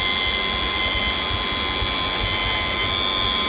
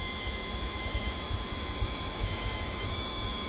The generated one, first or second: second